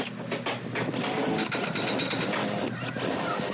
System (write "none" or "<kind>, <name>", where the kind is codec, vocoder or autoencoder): none